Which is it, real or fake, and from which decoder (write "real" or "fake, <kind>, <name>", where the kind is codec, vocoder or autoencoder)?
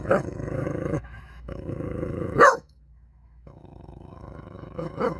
fake, autoencoder, DAC-VAE